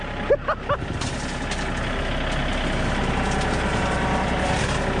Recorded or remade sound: recorded